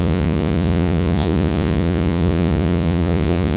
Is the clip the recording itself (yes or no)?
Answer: no